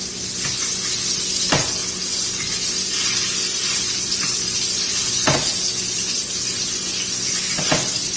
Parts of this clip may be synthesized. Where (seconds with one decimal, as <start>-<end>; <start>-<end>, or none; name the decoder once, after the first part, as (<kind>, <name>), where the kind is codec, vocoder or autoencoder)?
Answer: none